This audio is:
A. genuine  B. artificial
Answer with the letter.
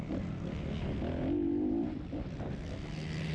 A